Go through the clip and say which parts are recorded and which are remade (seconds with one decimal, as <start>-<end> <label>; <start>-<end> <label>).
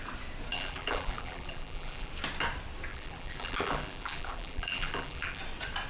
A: 0.0-0.5 recorded; 0.5-2.1 remade; 2.1-2.9 recorded; 2.9-5.4 remade; 5.4-5.9 recorded